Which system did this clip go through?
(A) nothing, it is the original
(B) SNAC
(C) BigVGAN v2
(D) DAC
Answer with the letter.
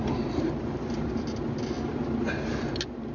A